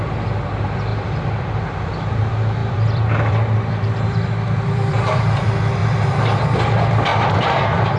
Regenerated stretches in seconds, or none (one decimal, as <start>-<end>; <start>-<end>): 2.6-5.2; 5.8-6.4; 7.1-8.0

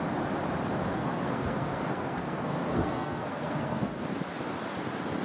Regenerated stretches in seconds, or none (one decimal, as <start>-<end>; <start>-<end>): 0.9-4.0

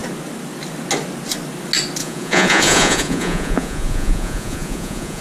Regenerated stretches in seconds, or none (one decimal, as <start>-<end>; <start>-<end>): 2.0-5.2

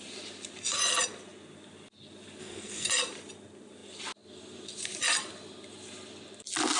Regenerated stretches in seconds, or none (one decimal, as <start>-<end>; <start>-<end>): 2.4-2.9

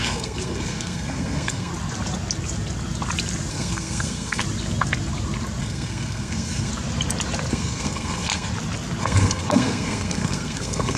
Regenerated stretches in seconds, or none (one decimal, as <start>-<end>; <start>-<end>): 0.0-1.7; 3.5-4.4; 5.6-6.7; 7.5-8.5; 9.0-11.0

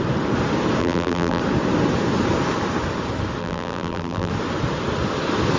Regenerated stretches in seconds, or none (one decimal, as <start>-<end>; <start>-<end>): 0.8-1.4; 3.4-4.3